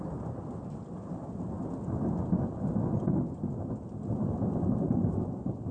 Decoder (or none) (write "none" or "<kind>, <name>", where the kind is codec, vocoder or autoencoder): none